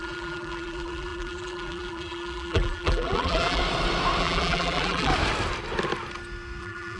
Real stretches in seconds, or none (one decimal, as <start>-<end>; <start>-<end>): 3.6-4.2; 5.1-6.6

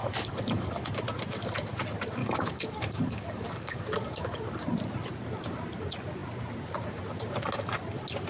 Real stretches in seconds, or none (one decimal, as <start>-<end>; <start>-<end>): 0.8-2.2; 4.4-8.3

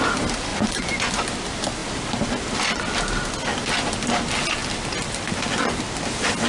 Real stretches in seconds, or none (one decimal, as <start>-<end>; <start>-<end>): 0.0-0.5; 1.1-6.5

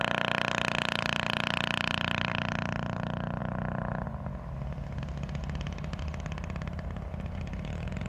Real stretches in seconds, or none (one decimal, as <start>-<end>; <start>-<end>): 0.0-8.1

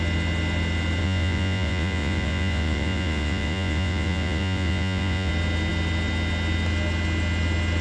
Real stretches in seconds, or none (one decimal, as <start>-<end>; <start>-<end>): 0.0-1.0; 5.3-7.8